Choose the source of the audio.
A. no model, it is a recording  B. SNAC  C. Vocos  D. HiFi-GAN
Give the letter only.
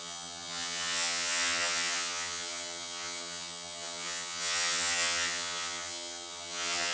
D